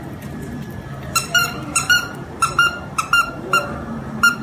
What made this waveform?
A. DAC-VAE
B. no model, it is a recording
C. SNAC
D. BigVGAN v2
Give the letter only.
D